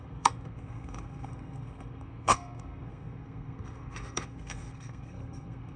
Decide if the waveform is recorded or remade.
remade